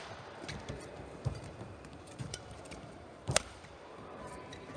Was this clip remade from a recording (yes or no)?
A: yes